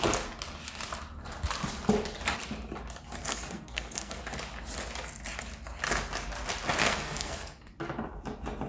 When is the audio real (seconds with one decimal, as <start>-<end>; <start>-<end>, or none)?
0.0-3.2; 4.2-6.8; 7.7-8.7